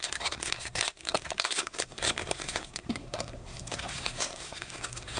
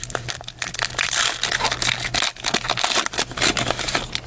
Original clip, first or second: second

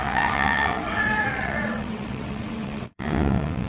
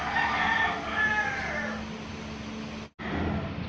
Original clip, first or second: second